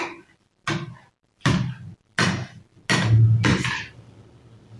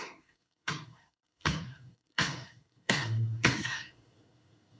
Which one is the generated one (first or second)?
second